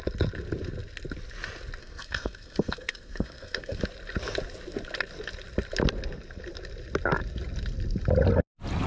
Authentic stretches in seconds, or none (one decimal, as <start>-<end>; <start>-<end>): 0.0-1.8; 3.8-8.9